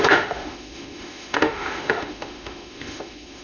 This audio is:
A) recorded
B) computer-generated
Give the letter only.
B